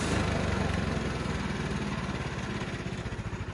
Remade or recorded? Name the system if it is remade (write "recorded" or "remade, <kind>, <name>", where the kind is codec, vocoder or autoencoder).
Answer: recorded